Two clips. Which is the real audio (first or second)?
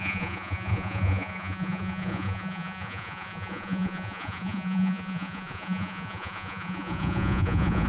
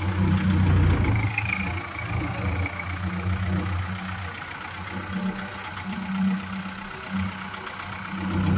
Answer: second